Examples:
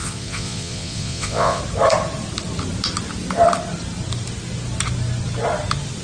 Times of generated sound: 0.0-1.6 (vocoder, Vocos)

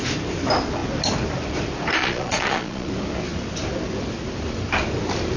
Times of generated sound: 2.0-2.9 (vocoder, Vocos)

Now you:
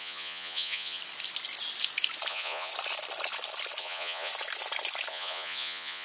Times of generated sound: 0.0-1.0 (vocoder, Vocos); 2.3-2.7; 3.8-4.3; 5.1-6.0